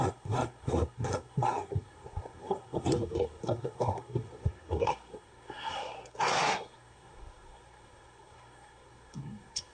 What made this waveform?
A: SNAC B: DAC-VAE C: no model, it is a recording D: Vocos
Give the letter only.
A